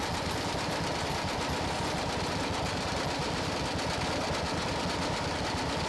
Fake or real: real